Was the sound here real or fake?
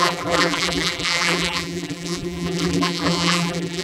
fake